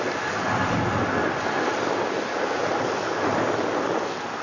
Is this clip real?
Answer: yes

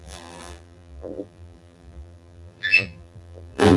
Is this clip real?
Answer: no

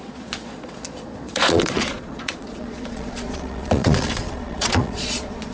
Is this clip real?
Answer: no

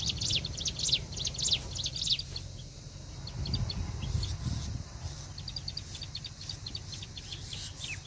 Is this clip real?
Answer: yes